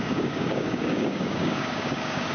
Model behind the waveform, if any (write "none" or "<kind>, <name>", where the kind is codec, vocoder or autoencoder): codec, DAC